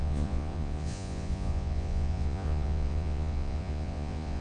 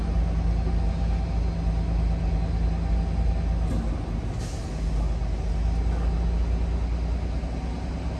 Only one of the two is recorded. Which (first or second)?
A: second